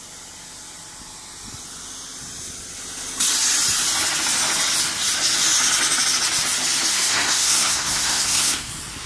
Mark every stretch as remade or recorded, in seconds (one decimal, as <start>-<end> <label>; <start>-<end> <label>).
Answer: 0.0-6.9 recorded; 6.9-8.7 remade; 8.7-9.1 recorded